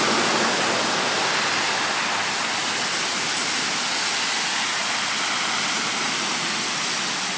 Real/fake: real